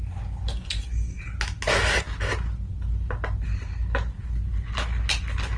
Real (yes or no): yes